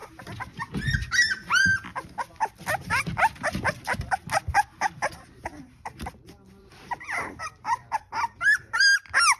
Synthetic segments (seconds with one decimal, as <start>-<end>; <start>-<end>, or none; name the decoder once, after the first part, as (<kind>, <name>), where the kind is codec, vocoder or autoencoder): 6.6-8.0 (vocoder, BigVGAN v2)